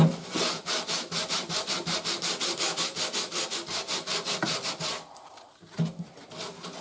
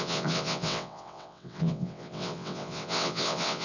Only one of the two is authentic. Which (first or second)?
first